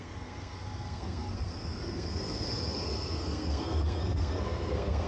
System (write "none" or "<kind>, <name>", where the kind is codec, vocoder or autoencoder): codec, SNAC